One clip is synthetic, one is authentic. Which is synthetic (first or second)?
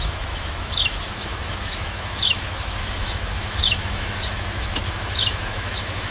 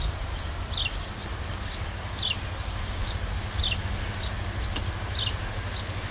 first